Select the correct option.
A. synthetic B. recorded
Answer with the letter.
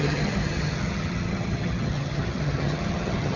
A